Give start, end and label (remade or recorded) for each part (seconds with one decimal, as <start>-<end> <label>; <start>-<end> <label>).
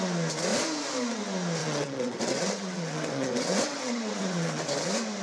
0.0-1.6 recorded; 1.6-4.7 remade; 4.7-5.2 recorded